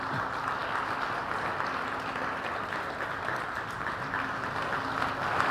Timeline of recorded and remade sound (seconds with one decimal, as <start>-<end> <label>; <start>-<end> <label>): 0.0-5.5 recorded